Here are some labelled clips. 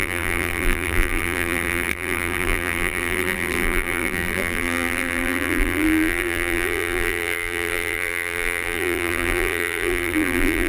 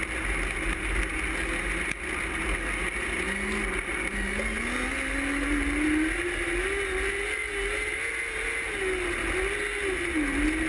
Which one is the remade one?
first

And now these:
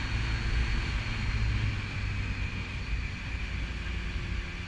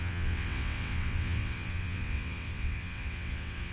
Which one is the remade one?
second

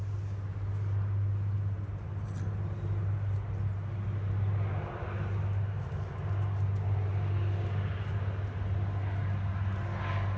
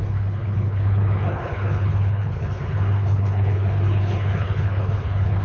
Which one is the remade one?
second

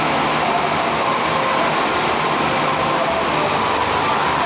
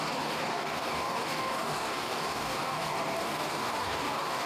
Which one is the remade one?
second